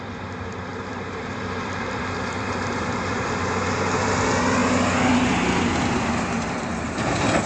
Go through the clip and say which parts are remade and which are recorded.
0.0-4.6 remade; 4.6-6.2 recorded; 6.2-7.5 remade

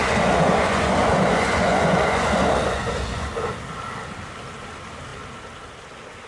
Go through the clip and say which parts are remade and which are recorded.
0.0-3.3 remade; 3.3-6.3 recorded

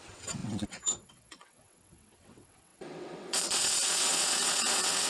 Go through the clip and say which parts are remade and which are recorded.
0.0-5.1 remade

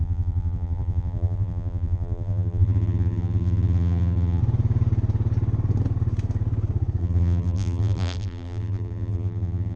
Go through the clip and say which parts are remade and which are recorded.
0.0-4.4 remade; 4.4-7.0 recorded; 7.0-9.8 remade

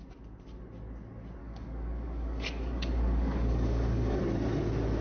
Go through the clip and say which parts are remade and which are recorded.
0.0-1.4 recorded; 1.4-4.2 remade; 4.2-5.0 recorded